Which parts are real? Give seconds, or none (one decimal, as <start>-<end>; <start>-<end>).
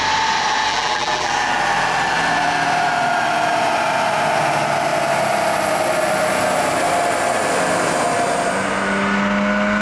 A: 0.0-0.7; 1.3-9.8